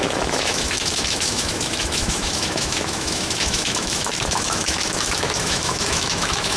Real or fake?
fake